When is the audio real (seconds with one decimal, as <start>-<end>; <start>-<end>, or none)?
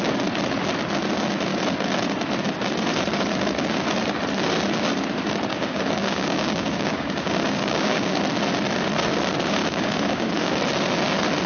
0.0-5.5; 8.2-9.6; 10.5-11.5